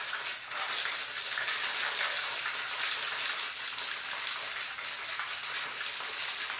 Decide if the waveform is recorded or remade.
recorded